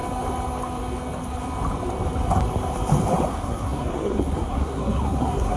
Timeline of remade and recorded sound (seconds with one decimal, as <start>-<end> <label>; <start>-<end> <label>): 0.0-3.3 recorded; 3.3-5.6 remade